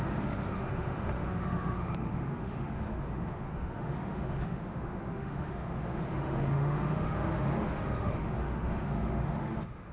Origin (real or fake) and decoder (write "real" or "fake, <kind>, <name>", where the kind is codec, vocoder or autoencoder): fake, autoencoder, DAC-VAE